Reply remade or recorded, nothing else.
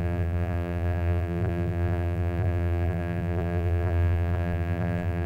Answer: remade